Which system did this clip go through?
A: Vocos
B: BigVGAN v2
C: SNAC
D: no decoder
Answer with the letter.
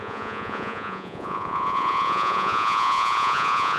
A